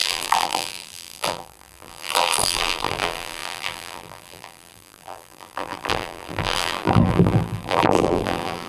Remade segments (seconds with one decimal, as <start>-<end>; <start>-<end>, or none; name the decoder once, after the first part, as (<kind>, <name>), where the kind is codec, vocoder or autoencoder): 0.0-8.7 (vocoder, BigVGAN v2)